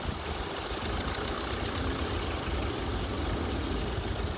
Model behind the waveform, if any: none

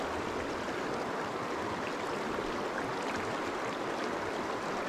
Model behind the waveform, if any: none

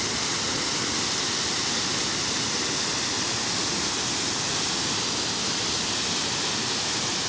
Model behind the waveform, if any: none